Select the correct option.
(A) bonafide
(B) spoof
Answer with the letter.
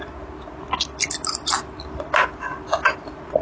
A